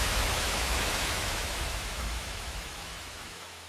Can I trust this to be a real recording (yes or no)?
no